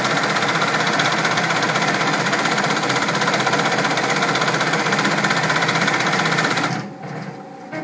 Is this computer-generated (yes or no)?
no